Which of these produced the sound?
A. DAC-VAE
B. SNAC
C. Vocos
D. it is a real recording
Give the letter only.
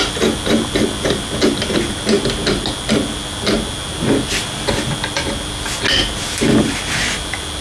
D